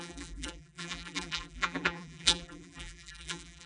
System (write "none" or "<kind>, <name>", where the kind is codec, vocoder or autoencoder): vocoder, BigVGAN v2